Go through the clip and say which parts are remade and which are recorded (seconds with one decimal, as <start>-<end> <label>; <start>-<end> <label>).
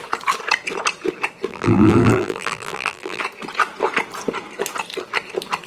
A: 0.0-1.5 recorded; 1.5-3.2 remade; 3.2-5.7 recorded